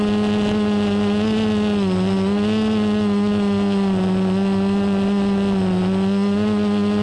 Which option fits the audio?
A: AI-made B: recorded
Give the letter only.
B